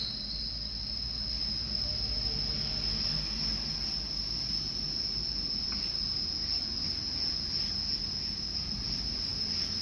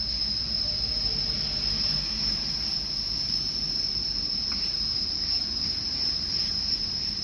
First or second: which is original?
first